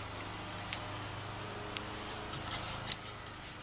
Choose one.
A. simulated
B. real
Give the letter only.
B